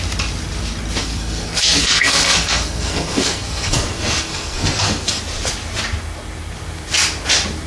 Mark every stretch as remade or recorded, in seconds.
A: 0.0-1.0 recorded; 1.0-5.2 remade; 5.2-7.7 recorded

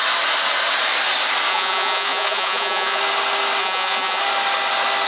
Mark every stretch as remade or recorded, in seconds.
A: 0.0-1.5 recorded; 1.5-3.0 remade; 3.0-3.6 recorded; 3.6-4.2 remade; 4.2-5.1 recorded

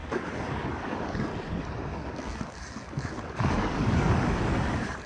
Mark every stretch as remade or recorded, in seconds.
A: 0.0-1.3 remade; 1.3-1.9 recorded; 1.9-5.1 remade

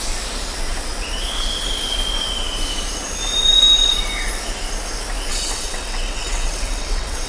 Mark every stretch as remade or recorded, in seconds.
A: 0.0-5.3 recorded; 5.3-7.3 remade

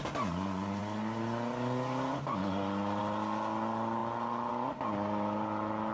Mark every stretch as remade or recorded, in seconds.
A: 0.0-5.9 recorded

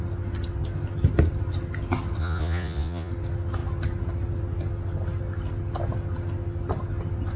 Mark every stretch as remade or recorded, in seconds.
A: 0.0-2.2 recorded; 2.2-3.1 remade; 3.1-7.4 recorded

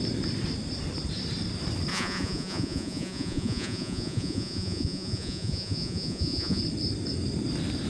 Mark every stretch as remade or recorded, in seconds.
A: 0.0-1.9 recorded; 1.9-6.6 remade; 6.6-7.9 recorded

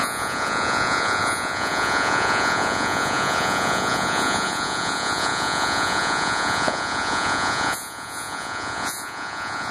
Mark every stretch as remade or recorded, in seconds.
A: 0.0-9.7 remade